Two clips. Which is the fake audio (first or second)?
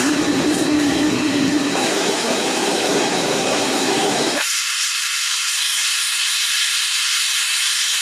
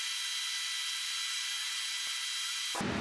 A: first